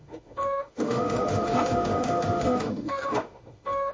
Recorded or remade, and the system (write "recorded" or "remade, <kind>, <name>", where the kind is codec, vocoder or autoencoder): remade, autoencoder, DAC-VAE